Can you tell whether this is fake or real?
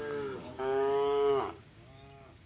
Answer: fake